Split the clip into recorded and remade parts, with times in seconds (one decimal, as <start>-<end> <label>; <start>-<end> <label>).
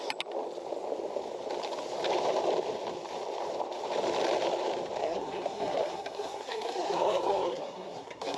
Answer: 0.0-5.0 recorded; 5.0-8.4 remade